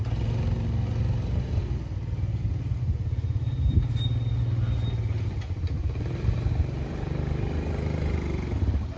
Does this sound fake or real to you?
real